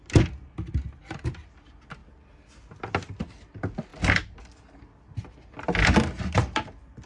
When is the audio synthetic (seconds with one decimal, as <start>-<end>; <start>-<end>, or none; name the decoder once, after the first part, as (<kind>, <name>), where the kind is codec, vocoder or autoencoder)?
none